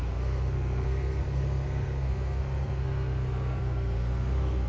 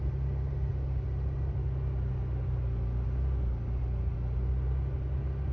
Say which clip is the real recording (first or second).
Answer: second